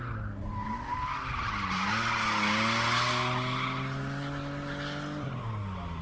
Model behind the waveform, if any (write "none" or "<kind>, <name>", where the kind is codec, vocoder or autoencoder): none